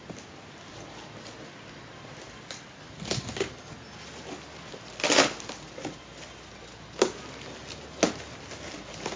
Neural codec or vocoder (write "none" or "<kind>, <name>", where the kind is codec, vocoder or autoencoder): none